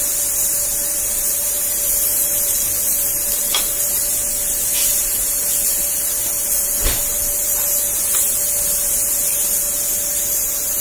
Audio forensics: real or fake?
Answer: real